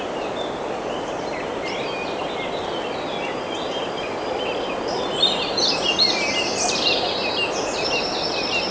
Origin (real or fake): real